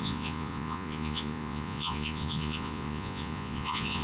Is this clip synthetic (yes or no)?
yes